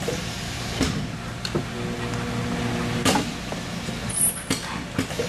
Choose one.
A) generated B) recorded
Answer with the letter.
B